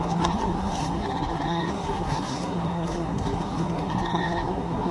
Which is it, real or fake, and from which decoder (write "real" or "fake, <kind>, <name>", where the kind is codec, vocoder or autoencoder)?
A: fake, codec, SNAC